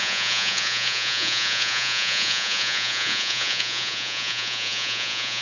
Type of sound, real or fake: fake